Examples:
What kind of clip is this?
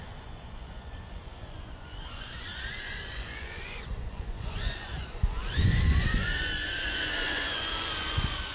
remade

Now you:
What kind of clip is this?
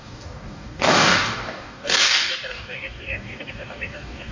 remade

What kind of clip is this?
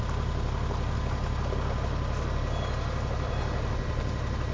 recorded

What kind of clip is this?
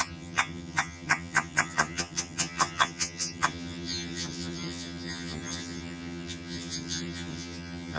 remade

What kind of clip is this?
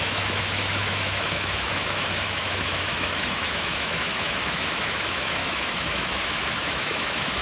remade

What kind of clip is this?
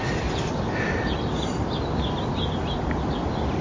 recorded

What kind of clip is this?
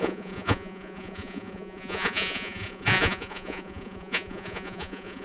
remade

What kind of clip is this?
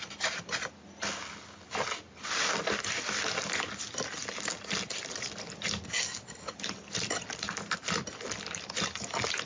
recorded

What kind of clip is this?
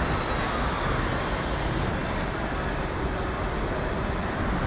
recorded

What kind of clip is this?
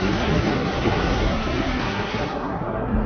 remade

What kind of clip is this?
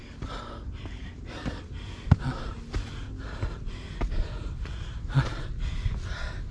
recorded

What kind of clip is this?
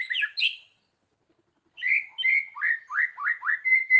recorded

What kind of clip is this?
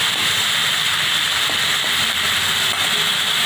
recorded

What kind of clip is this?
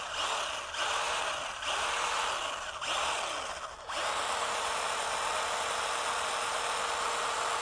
recorded